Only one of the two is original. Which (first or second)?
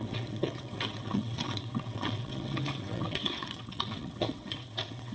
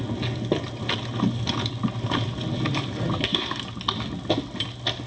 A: second